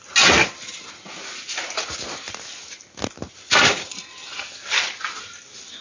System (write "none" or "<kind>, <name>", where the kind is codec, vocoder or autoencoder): none